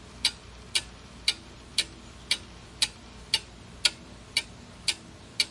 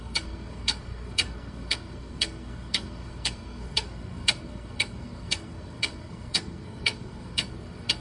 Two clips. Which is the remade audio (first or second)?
second